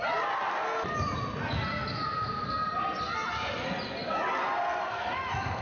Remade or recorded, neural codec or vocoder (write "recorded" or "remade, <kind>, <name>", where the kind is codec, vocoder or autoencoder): recorded